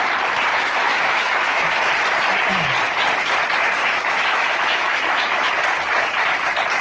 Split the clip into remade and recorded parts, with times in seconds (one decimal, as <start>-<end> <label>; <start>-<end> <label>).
0.0-0.5 recorded; 0.5-1.9 remade; 1.9-3.8 recorded; 3.8-5.5 remade; 5.5-6.8 recorded